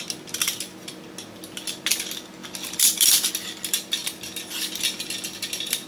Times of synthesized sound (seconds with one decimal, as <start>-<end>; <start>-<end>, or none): 2.4-3.3; 4.0-4.8